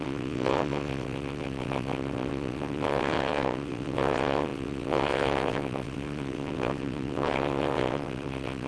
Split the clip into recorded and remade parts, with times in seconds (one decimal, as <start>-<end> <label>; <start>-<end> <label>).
0.0-8.7 remade